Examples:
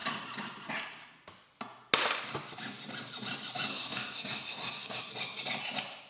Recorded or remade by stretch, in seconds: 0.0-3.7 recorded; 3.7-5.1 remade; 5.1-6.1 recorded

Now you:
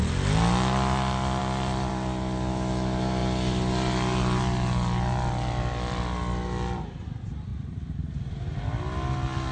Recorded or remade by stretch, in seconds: 0.0-7.5 recorded; 7.5-8.1 remade; 8.1-9.5 recorded

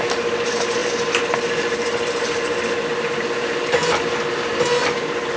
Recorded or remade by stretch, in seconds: 0.0-0.8 recorded; 0.8-4.0 remade; 4.0-5.4 recorded

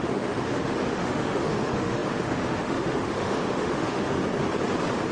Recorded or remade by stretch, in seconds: 0.0-4.2 remade; 4.2-5.1 recorded

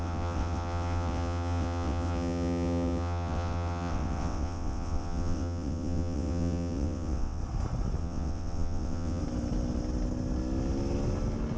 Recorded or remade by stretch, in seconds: 0.0-7.4 remade; 7.4-8.0 recorded; 8.0-9.2 remade; 9.2-11.6 recorded

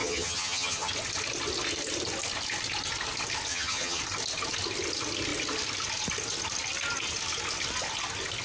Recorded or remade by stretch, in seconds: 0.0-0.9 remade; 0.9-3.5 recorded; 3.5-4.0 remade; 4.0-8.4 recorded